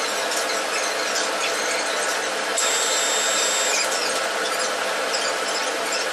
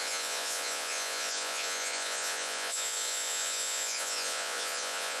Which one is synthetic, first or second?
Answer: second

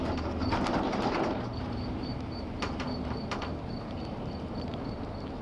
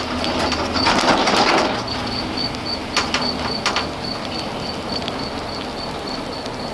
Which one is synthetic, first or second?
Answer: first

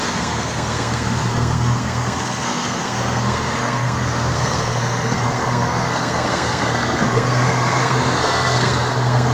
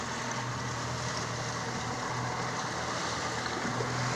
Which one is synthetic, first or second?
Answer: first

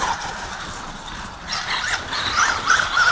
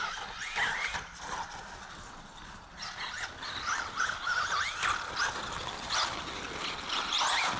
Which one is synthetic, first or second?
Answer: first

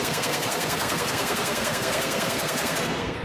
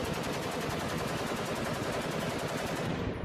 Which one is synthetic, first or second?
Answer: first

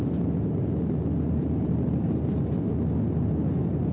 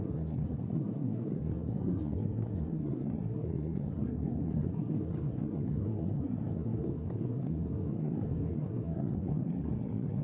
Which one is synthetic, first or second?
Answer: second